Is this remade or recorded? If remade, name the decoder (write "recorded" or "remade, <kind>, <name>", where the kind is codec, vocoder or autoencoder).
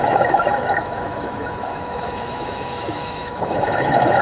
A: remade, autoencoder, DAC-VAE